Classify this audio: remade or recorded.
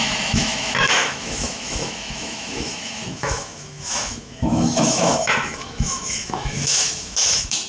remade